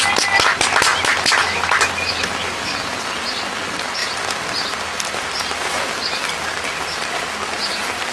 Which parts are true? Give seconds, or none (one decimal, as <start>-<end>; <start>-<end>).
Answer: 0.0-0.9; 3.0-4.0; 6.8-8.1